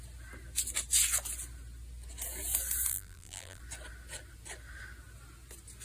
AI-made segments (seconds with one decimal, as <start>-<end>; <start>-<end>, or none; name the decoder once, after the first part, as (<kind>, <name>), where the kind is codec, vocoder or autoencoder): 2.9-3.6 (vocoder, BigVGAN v2)